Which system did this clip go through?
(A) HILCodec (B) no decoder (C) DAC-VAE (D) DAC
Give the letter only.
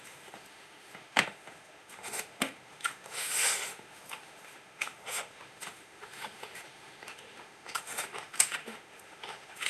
C